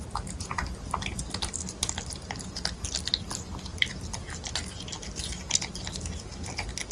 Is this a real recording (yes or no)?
yes